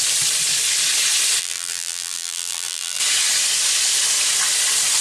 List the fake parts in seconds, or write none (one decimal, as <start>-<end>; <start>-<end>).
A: 1.4-3.0